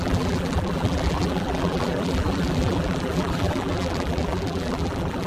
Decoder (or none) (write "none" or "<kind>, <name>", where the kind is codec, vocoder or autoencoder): vocoder, BigVGAN v2